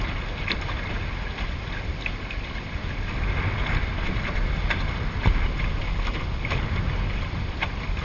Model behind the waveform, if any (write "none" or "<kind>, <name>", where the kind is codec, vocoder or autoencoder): none